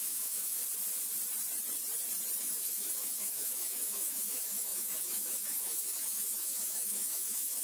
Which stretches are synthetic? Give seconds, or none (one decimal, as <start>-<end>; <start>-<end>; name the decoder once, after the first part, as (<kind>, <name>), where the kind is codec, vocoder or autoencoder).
0.0-0.6 (autoencoder, DAC-VAE); 2.4-7.6